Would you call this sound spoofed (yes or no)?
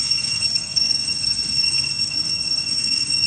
yes